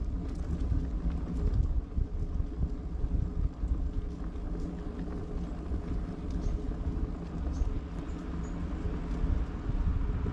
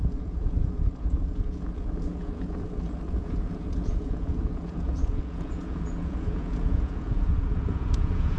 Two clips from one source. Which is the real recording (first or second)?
first